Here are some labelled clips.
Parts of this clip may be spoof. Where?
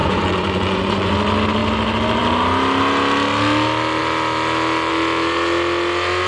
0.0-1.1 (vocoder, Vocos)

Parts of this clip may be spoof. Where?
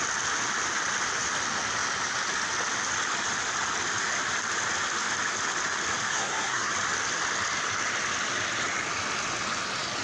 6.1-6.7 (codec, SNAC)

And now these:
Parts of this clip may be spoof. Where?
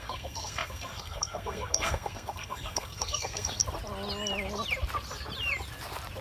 0.0-3.6 (codec, SNAC)